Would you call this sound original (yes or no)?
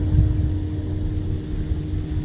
yes